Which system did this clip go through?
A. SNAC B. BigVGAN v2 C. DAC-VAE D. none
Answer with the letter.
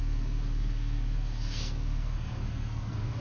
A